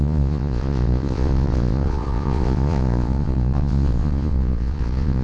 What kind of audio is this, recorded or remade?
remade